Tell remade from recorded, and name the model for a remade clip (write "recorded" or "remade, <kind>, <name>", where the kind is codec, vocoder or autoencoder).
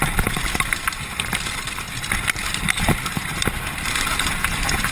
recorded